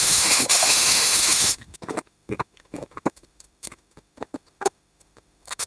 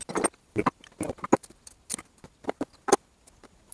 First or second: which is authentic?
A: second